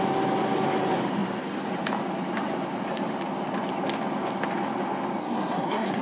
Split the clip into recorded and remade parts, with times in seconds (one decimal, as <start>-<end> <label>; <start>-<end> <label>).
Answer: 0.0-5.2 recorded; 5.2-6.0 remade